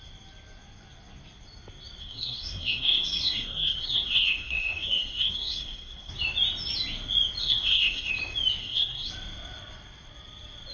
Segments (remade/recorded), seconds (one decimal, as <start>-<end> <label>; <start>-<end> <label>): 0.0-2.0 recorded; 2.0-6.1 remade; 6.1-7.4 recorded; 7.4-8.1 remade; 8.1-8.6 recorded; 8.6-9.1 remade; 9.1-10.7 recorded